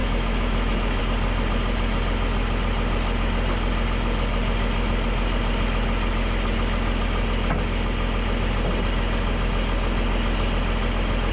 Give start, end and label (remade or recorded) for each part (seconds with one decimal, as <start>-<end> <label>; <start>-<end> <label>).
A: 0.0-1.0 remade; 1.0-11.3 recorded